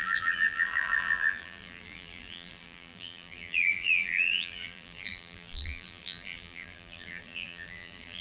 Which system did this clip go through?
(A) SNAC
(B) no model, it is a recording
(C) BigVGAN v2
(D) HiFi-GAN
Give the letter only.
C